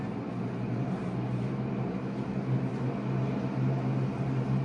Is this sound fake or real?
real